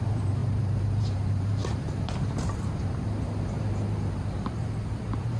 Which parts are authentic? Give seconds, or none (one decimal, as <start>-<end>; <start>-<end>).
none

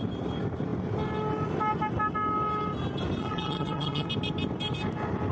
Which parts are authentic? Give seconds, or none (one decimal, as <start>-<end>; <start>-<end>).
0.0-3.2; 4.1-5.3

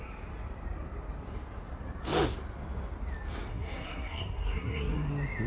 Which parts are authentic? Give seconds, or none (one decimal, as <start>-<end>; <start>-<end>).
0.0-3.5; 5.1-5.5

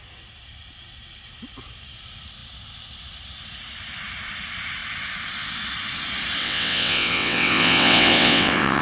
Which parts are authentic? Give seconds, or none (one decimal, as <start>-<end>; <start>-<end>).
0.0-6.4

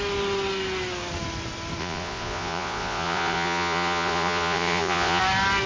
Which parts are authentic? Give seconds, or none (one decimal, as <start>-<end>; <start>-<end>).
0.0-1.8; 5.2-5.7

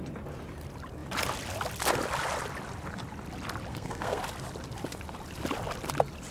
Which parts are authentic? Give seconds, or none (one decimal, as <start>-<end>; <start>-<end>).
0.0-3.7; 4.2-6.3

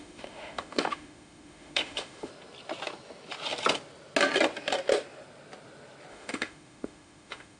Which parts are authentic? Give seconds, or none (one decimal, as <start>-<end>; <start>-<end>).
2.3-6.1